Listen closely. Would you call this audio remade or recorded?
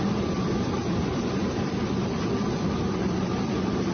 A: remade